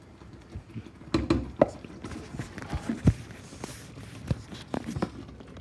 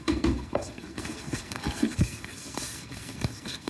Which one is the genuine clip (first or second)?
first